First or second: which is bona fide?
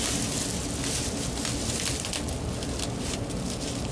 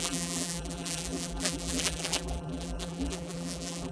first